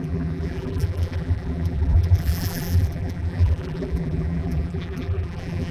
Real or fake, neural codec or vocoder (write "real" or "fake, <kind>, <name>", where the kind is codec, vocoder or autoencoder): fake, vocoder, BigVGAN v2